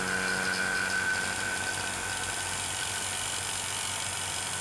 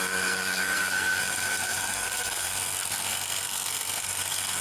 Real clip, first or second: first